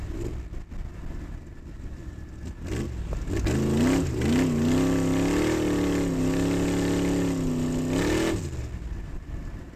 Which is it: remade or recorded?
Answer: recorded